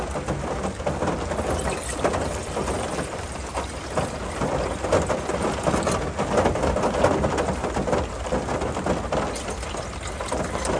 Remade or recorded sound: recorded